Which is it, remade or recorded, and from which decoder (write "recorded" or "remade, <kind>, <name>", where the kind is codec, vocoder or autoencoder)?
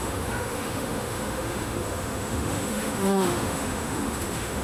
remade, autoencoder, DAC-VAE